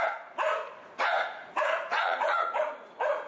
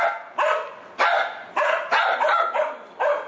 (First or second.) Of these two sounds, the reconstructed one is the first